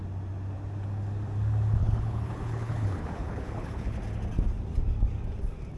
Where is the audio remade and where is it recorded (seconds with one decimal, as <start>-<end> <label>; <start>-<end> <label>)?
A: 0.0-1.8 recorded; 1.8-4.0 remade; 4.0-5.8 recorded